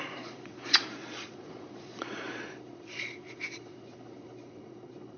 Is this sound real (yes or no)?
no